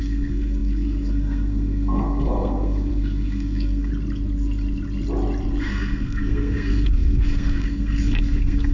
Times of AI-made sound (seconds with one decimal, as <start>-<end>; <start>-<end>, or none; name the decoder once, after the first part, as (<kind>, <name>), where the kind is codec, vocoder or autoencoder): 0.0-3.9 (codec, SNAC); 5.6-8.7